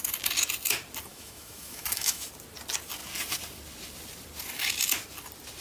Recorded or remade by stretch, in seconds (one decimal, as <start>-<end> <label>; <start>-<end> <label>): 0.0-1.1 recorded; 1.1-2.3 remade; 2.3-5.6 recorded